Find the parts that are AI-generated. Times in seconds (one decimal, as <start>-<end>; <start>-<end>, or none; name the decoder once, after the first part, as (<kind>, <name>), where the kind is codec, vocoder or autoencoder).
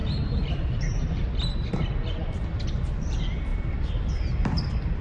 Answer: none